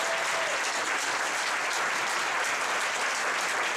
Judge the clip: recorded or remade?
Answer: recorded